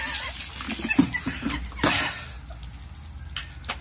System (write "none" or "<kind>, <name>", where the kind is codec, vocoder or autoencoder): none